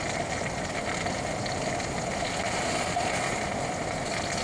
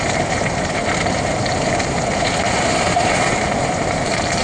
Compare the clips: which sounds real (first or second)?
first